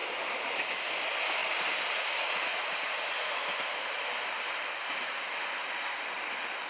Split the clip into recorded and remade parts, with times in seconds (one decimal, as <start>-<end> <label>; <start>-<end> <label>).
0.0-0.8 remade; 0.8-1.4 recorded; 1.4-5.3 remade; 5.3-6.7 recorded